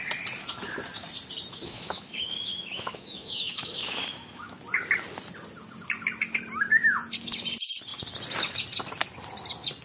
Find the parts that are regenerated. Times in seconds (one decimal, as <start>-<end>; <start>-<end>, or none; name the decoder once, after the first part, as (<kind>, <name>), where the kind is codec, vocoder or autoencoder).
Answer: 1.5-4.6 (autoencoder, DAC-VAE)